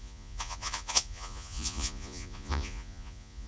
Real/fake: fake